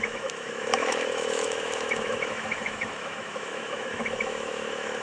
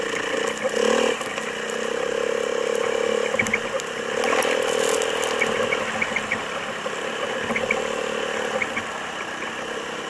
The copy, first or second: first